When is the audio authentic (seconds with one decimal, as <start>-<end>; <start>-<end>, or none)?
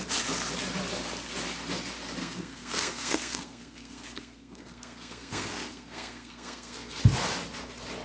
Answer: 0.0-2.2; 7.0-8.0